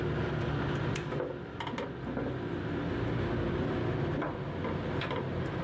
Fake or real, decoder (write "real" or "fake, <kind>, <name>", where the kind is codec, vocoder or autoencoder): real